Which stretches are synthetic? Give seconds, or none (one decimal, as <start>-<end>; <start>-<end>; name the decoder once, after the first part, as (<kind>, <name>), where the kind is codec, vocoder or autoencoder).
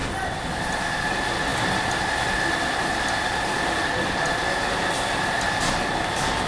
none